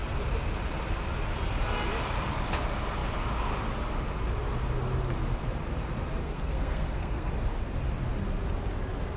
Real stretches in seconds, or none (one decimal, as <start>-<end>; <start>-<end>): 0.0-6.2; 7.3-9.2